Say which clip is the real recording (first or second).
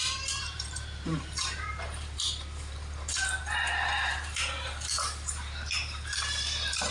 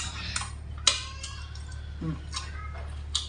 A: second